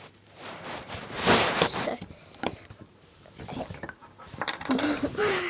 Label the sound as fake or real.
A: fake